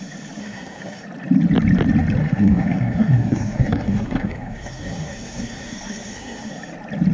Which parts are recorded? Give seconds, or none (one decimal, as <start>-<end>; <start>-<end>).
0.0-0.4; 1.0-2.2; 6.5-7.1